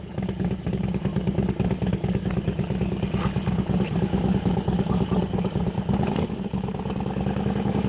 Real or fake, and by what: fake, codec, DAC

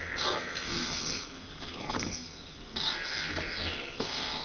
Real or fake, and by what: fake, codec, SNAC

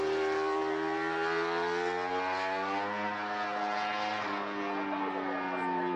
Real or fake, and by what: real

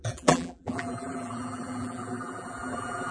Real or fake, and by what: fake, vocoder, BigVGAN v2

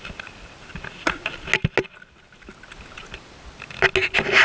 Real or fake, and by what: real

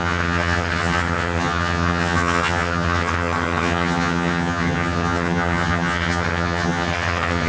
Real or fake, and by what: fake, vocoder, HiFi-GAN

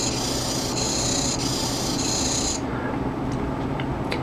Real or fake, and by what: real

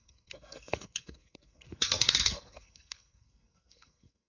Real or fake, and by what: fake, codec, SNAC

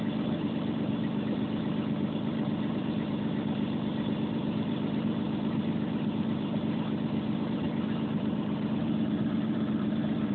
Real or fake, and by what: fake, vocoder, BigVGAN v2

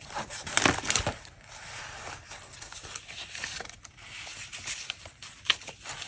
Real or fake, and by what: real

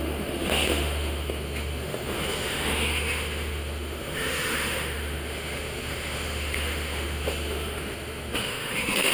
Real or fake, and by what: fake, autoencoder, DAC-VAE